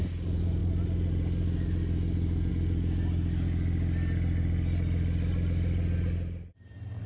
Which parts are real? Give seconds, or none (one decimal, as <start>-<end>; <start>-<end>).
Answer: 0.0-7.1